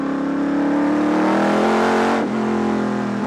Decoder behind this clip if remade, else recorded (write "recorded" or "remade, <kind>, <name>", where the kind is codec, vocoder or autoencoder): recorded